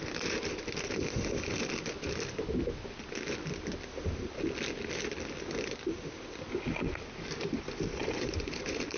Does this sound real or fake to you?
real